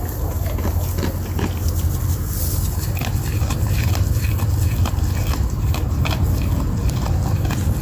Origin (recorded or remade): recorded